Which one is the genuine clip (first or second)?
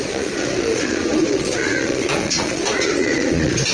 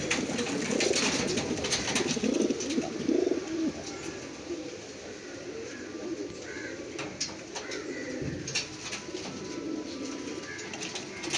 second